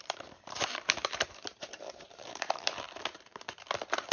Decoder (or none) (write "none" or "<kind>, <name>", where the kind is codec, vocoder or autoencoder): vocoder, BigVGAN v2